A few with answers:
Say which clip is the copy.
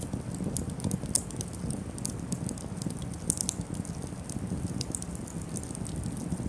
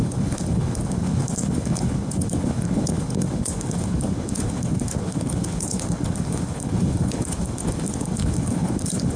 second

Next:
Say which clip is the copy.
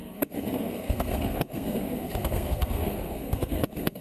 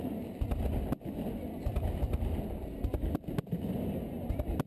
first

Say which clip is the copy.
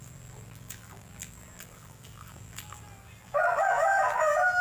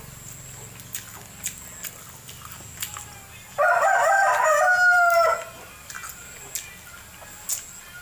first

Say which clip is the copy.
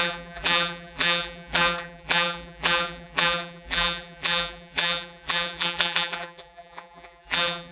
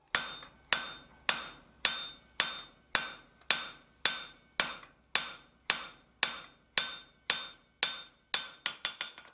first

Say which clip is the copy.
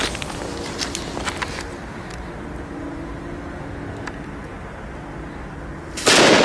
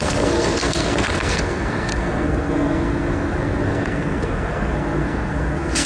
second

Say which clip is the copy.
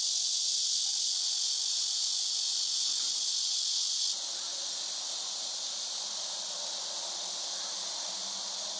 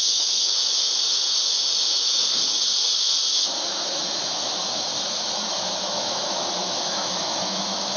second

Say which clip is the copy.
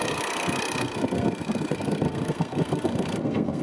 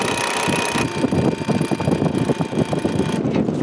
first